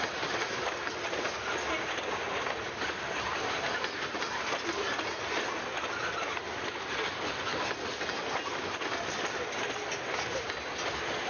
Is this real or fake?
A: real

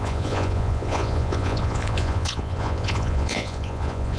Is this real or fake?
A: fake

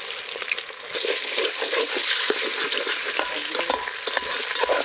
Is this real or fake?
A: real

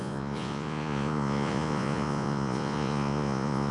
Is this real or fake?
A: fake